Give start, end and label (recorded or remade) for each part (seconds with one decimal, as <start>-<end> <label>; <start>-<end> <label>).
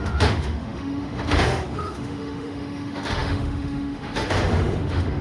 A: 0.0-5.2 remade